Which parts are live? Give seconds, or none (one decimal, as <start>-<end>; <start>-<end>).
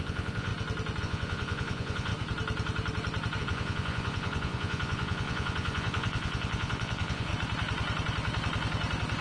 0.5-1.0; 2.1-3.4; 7.3-9.2